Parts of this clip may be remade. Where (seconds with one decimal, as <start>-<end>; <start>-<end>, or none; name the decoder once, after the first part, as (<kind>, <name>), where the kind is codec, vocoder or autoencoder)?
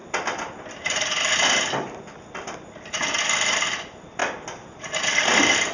none